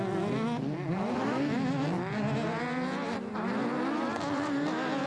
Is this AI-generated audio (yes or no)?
no